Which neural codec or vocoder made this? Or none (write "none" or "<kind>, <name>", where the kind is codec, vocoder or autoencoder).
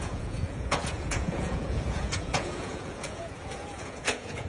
vocoder, Vocos